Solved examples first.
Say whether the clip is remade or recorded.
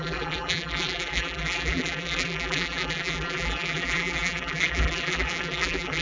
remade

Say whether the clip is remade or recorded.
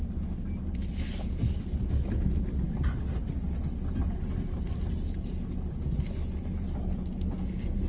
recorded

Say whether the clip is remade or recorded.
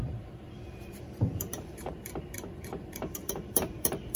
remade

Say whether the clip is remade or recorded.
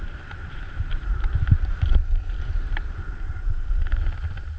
remade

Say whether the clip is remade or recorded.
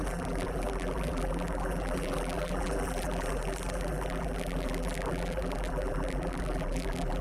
remade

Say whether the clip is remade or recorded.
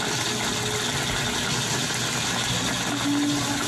recorded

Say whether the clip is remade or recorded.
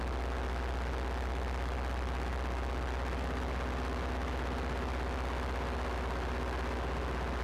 recorded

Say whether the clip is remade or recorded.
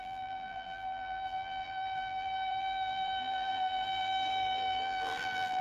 remade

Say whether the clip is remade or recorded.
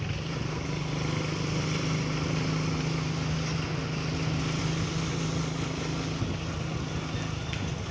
recorded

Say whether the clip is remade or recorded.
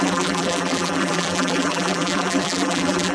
remade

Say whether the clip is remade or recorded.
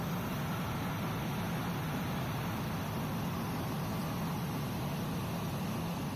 remade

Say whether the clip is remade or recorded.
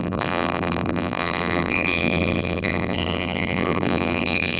remade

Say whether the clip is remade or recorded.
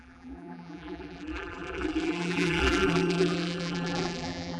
remade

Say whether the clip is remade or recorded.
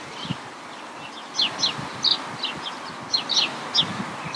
recorded